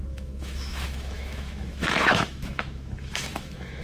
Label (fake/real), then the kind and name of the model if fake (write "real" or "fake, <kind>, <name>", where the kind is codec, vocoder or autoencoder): fake, autoencoder, DAC-VAE